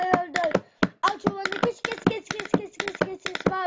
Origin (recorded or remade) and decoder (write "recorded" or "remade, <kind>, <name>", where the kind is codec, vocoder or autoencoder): recorded